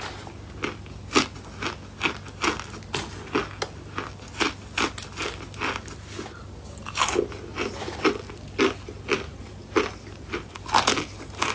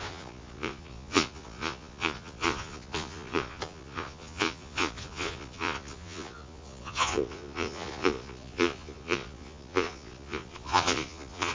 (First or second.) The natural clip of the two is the first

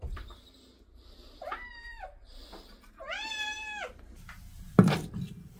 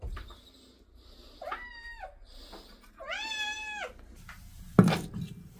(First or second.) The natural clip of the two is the second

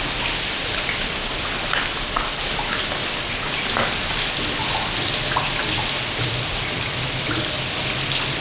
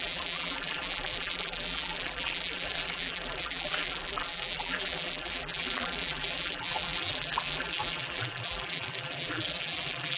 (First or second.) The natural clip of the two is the first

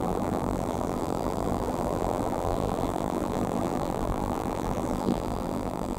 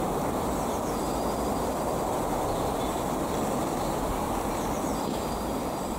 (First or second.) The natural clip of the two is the second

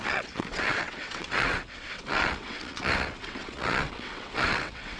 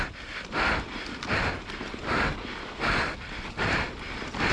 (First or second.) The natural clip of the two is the second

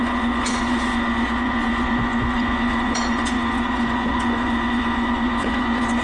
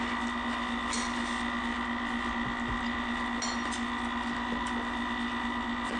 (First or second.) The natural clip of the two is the second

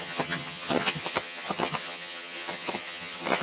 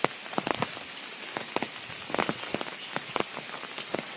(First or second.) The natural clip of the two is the second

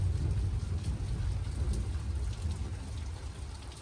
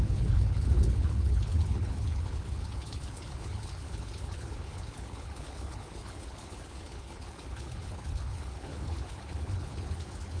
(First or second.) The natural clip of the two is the first